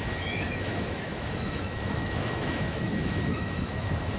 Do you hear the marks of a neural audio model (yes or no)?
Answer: yes